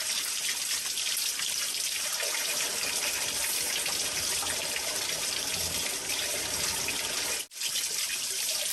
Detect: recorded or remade recorded